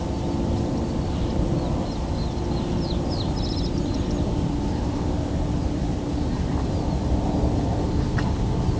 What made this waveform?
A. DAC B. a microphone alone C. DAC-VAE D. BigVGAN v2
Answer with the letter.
B